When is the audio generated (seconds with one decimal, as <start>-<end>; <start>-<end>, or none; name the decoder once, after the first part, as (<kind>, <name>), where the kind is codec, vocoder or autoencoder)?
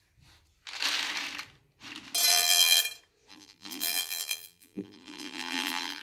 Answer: 2.3-2.8 (vocoder, BigVGAN v2); 3.3-6.0